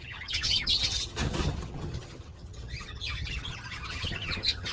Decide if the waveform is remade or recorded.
remade